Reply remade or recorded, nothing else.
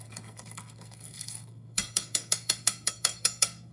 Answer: remade